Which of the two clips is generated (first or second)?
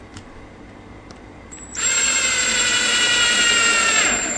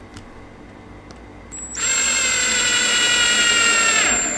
first